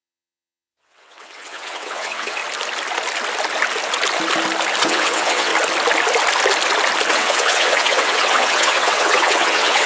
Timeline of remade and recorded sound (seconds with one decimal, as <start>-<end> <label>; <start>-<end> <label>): 0.0-2.4 remade; 2.4-4.8 recorded; 4.8-5.5 remade; 5.5-7.1 recorded; 7.1-9.9 remade